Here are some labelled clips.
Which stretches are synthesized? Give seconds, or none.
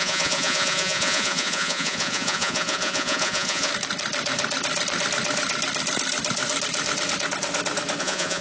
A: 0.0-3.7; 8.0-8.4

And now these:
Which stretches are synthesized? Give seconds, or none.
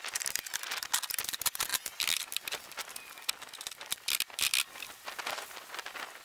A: none